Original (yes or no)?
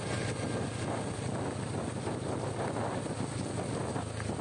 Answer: yes